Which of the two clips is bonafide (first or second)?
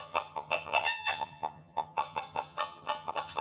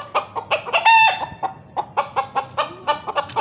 second